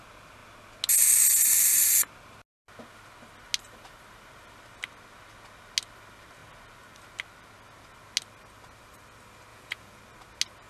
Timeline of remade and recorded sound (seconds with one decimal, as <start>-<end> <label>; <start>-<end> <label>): 0.0-9.5 recorded; 9.5-10.0 remade; 10.0-10.7 recorded